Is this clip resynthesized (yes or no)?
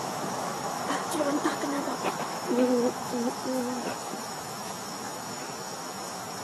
yes